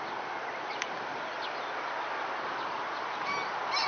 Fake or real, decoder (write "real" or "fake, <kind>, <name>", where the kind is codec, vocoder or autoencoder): real